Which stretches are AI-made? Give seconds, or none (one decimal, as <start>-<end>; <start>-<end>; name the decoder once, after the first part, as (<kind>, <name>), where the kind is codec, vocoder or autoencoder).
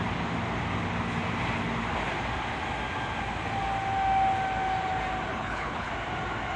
5.3-5.9 (codec, HILCodec)